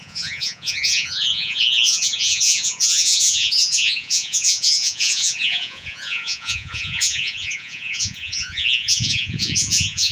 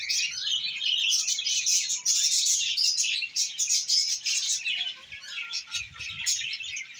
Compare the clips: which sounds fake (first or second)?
first